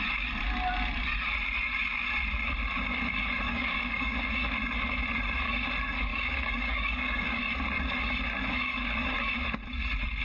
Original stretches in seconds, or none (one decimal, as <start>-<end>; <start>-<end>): 0.0-3.5; 4.1-6.1; 7.4-10.2

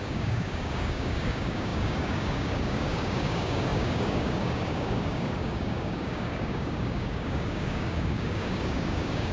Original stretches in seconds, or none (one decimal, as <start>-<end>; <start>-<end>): none

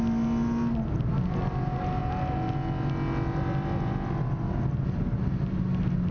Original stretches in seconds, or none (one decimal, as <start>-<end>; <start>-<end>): 0.0-6.1